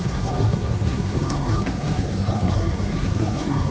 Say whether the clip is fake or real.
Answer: fake